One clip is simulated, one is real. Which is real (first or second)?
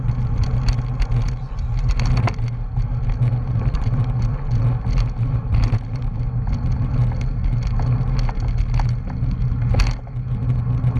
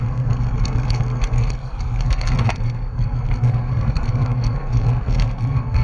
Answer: first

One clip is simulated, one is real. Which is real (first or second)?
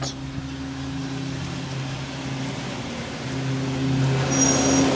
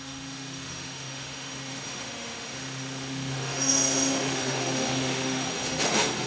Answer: first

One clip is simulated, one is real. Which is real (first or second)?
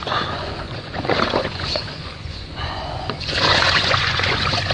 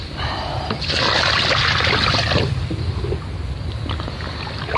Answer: second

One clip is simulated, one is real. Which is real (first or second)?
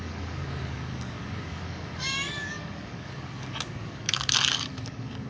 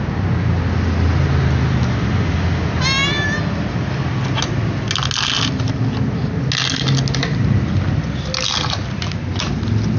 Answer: second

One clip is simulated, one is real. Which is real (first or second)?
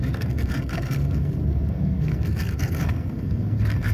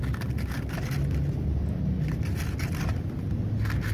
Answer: second